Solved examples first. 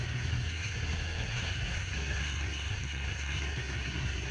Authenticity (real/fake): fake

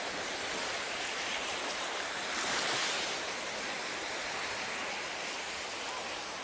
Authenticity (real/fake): real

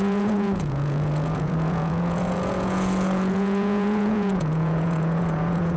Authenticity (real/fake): fake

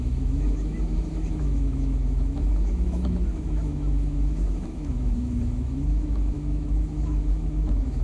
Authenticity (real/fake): fake